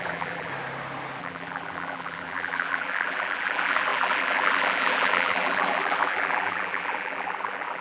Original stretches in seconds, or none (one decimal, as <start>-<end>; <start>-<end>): 0.5-1.2